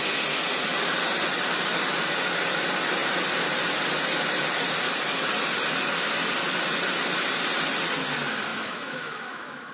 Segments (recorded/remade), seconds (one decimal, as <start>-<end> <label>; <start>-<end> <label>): 0.0-8.5 recorded; 8.5-9.7 remade